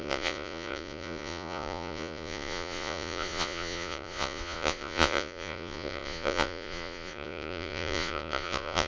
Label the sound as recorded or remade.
remade